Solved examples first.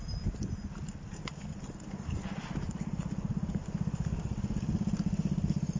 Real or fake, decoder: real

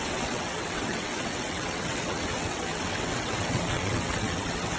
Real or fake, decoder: fake, vocoder, WaveNeXt